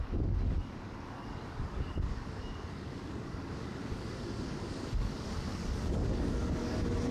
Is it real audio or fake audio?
fake